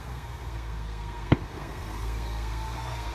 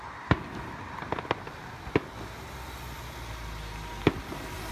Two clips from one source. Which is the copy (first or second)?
first